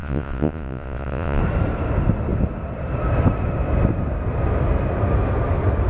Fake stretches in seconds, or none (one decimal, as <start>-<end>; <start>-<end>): 0.0-1.4